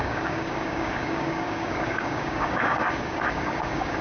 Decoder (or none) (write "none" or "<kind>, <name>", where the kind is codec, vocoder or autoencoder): codec, DAC